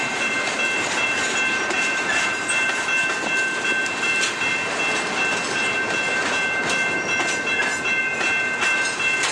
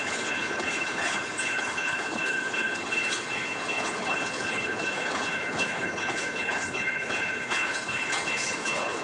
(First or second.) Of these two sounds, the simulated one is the second